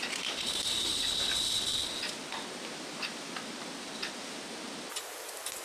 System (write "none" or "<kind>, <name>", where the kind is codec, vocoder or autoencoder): none